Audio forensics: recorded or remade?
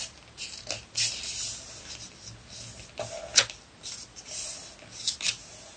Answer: recorded